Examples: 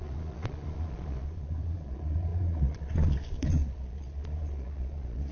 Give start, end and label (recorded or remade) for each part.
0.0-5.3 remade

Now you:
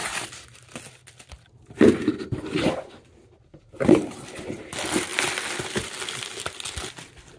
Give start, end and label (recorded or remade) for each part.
0.0-7.4 recorded

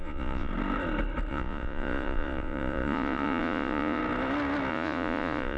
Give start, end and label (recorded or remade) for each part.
0.0-0.5 remade; 0.5-1.3 recorded; 1.3-4.0 remade; 4.0-4.7 recorded; 4.7-5.6 remade

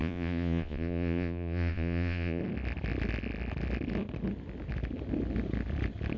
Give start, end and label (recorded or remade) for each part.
0.0-2.4 remade; 2.4-6.2 recorded

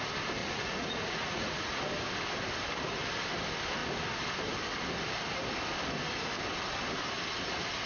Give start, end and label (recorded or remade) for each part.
0.0-0.4 recorded; 0.4-1.8 remade; 1.8-7.9 recorded

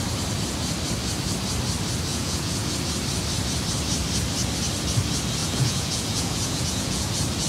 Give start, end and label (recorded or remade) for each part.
0.0-2.1 recorded; 2.1-2.7 remade; 2.7-5.4 recorded; 5.4-7.1 remade; 7.1-7.5 recorded